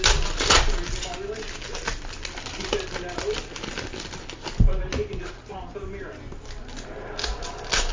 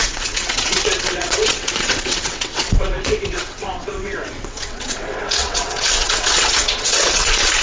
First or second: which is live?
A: first